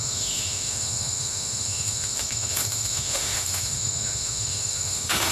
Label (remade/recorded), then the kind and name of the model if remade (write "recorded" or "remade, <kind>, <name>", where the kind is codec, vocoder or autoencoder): remade, autoencoder, DAC-VAE